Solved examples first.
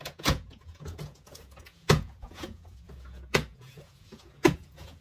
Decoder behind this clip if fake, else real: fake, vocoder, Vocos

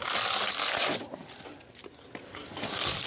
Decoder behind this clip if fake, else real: real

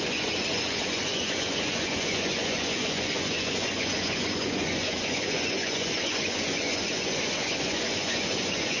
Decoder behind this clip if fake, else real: fake, vocoder, Vocos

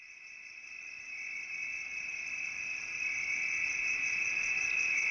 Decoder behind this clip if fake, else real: real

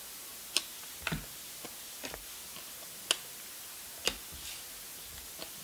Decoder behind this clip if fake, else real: real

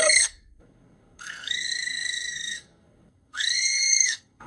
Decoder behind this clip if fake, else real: fake, codec, SNAC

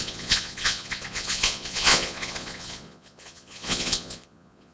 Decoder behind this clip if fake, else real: fake, vocoder, Vocos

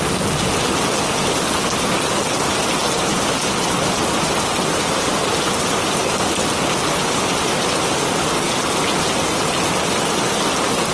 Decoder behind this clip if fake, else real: real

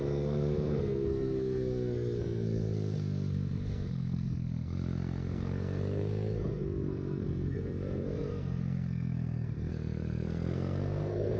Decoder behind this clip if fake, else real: fake, codec, SNAC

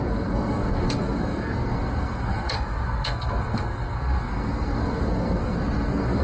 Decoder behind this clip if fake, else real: fake, codec, SNAC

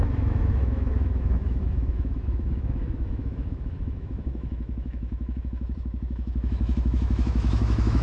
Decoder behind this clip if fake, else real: fake, autoencoder, DAC-VAE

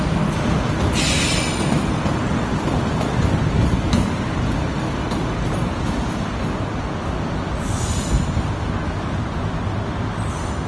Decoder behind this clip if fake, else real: real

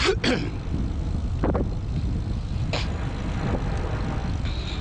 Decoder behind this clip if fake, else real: real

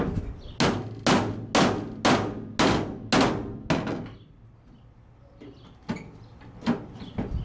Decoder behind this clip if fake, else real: real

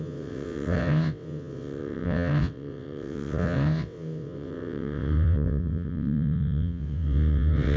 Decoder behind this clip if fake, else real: fake, vocoder, WaveNeXt